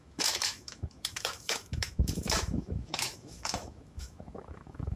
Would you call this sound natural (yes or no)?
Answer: no